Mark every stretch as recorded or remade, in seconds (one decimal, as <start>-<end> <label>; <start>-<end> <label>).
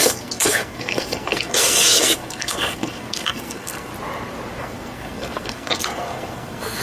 0.0-3.9 remade; 3.9-4.6 recorded; 4.6-6.8 remade